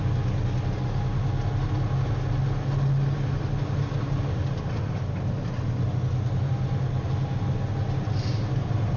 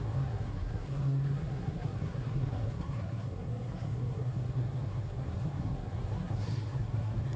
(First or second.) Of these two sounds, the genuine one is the first